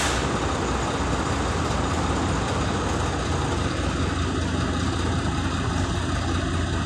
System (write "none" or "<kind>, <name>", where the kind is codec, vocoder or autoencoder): none